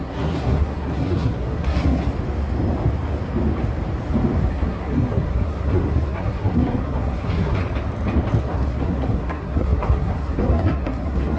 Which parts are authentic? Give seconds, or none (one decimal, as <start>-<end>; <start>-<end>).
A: 2.0-4.5; 7.6-8.4